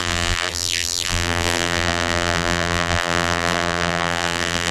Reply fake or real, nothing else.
fake